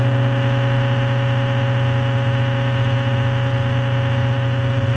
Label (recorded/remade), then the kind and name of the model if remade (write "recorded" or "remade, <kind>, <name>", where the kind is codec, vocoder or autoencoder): recorded